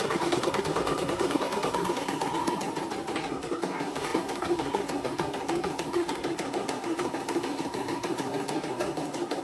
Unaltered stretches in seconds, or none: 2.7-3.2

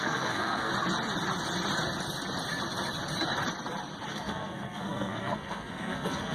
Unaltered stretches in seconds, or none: 0.7-4.1

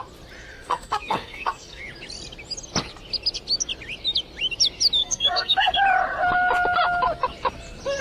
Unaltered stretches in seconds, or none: 0.0-0.5; 1.8-5.0; 5.8-8.0

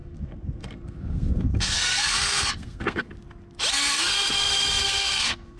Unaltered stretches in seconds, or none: 3.1-3.7

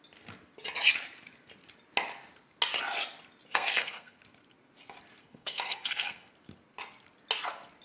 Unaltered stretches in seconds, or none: 0.0-3.5; 4.2-5.2; 6.3-7.8

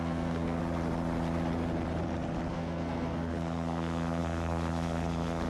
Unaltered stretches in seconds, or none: 0.6-2.5

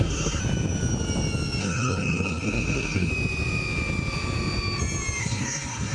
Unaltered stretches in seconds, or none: 0.4-1.6; 3.1-5.2

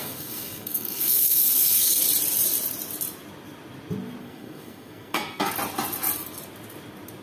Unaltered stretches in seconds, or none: 2.0-4.2; 5.5-7.2